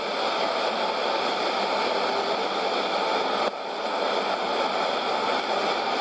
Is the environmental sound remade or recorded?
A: recorded